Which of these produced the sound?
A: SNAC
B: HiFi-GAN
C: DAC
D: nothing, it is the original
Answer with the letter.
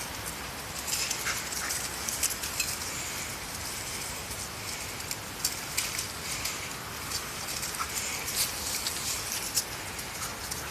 D